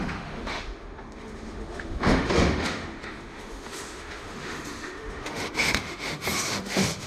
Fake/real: fake